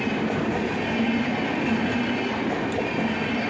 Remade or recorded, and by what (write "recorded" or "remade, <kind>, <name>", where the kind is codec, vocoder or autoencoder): recorded